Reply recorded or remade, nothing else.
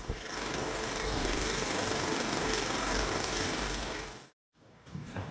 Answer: remade